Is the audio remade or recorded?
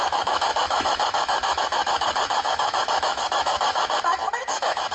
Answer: remade